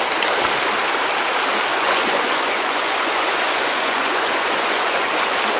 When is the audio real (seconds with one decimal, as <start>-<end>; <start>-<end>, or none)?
0.0-1.7; 5.1-5.6